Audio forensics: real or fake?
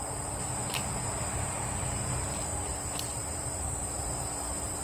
fake